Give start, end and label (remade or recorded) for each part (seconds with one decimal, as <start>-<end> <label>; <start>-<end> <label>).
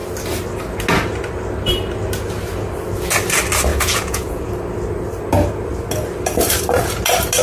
0.0-3.7 recorded; 3.7-4.5 remade; 4.5-7.4 recorded